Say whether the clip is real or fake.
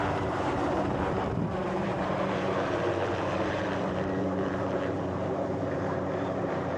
fake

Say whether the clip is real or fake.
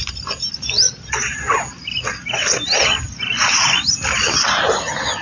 real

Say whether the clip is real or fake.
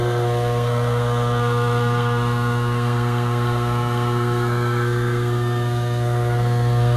fake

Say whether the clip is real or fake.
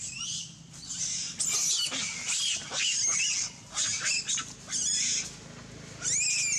real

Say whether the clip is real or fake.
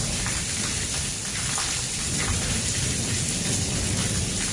fake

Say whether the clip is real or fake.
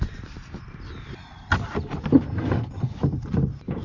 real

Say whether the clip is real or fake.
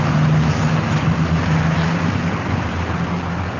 real